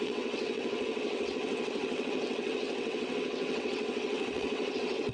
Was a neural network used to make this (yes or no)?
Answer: yes